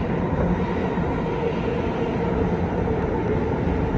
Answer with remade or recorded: recorded